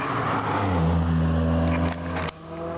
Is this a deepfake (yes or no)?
no